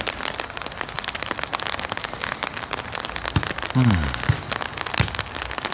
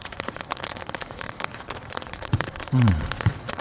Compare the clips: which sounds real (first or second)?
first